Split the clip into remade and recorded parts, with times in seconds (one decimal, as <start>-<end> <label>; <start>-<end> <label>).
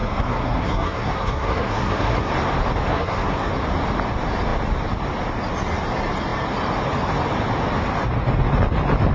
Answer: 0.0-2.3 remade; 2.3-2.9 recorded; 2.9-3.5 remade; 3.5-9.1 recorded